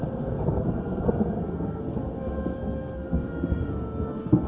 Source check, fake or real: fake